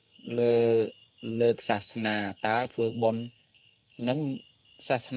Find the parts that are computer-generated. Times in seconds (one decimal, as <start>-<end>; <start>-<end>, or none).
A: 0.0-0.9; 1.3-4.4